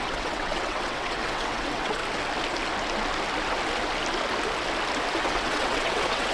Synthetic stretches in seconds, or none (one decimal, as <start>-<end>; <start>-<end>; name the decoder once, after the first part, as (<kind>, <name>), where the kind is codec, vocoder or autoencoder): 0.0-2.0 (vocoder, WaveNeXt); 5.2-6.3